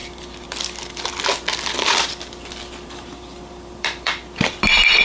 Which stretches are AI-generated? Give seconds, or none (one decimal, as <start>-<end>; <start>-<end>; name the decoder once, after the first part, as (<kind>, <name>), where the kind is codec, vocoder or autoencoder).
0.0-1.1 (vocoder, BigVGAN v2); 3.3-5.0